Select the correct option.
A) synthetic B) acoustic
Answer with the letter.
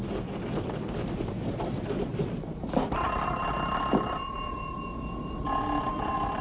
B